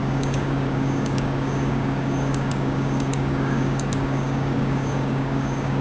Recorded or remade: remade